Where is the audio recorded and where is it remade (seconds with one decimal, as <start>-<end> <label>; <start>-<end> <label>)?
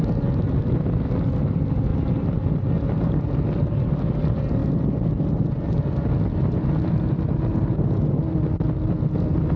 0.0-9.6 recorded